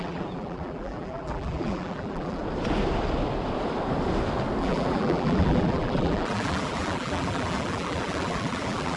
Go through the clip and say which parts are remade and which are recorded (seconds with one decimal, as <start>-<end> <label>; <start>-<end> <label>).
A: 0.0-2.4 remade; 2.4-4.6 recorded; 4.6-9.0 remade